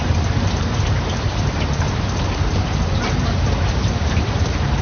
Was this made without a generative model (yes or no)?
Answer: no